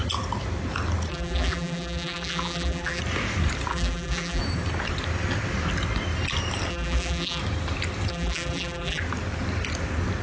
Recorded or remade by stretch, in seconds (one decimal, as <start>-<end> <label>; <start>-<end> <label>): 0.0-1.1 recorded; 1.1-3.0 remade; 3.0-3.7 recorded; 3.7-4.4 remade; 4.4-6.7 recorded; 6.7-7.4 remade; 7.4-8.1 recorded; 8.1-9.0 remade; 9.0-10.2 recorded